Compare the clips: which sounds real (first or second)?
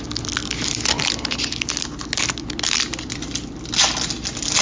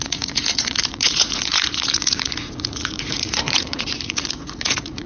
first